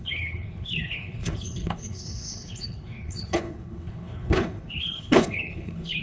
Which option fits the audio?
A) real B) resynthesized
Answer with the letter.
B